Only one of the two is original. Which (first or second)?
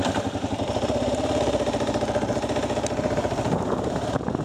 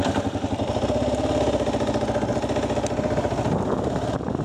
second